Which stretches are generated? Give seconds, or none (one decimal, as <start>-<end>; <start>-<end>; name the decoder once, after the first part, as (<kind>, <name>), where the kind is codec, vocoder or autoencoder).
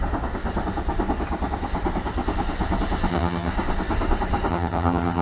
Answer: 3.1-3.5 (vocoder, HiFi-GAN); 4.5-5.2